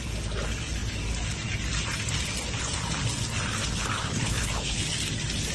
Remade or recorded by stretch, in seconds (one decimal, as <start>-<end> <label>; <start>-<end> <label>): 0.0-3.6 recorded; 3.6-4.8 remade; 4.8-5.5 recorded